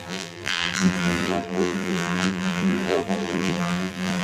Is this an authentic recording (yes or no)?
no